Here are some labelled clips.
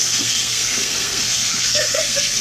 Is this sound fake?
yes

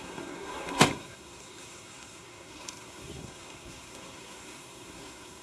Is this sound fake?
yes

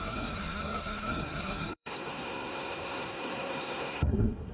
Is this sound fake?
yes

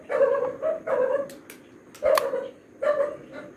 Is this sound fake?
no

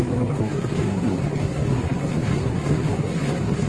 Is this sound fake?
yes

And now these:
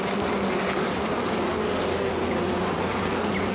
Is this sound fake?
no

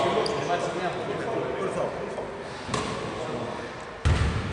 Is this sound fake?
no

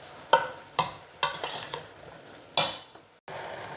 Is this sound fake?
no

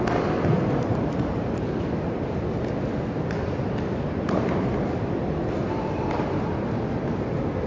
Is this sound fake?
no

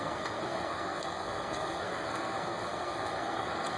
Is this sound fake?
yes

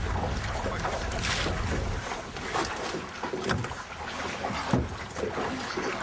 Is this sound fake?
no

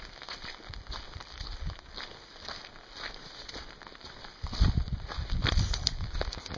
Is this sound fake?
no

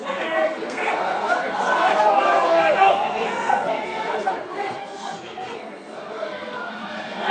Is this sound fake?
yes